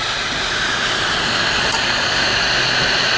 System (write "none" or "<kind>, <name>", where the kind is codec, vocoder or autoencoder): none